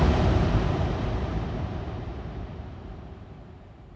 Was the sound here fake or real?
fake